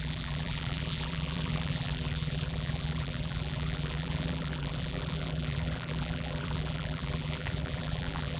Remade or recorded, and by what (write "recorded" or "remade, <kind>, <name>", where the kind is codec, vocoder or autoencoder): remade, vocoder, BigVGAN v2